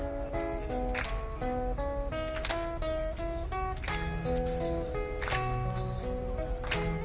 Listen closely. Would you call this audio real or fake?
real